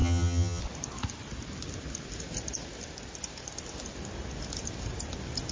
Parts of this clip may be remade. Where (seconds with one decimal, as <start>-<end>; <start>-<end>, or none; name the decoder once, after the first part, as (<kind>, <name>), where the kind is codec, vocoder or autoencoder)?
0.0-0.6 (vocoder, HiFi-GAN)